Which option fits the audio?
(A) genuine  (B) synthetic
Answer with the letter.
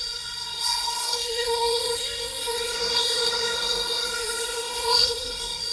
B